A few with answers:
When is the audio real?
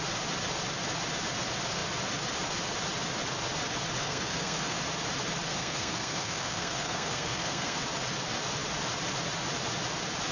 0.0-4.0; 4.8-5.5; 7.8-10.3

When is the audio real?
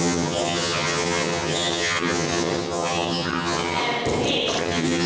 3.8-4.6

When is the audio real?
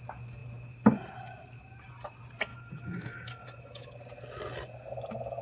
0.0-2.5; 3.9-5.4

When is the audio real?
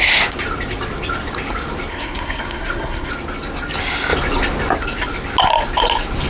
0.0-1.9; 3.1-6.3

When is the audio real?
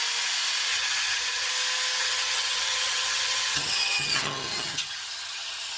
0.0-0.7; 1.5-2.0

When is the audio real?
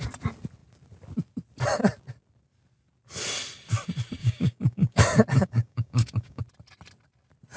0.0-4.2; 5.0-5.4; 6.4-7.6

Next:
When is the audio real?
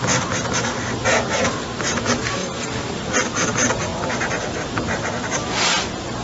0.0-6.2